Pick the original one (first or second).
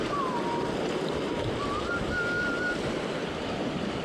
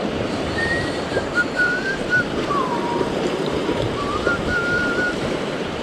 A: first